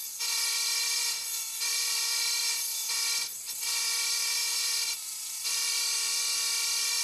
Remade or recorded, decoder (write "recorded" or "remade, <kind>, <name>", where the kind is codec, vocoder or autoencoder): remade, vocoder, BigVGAN v2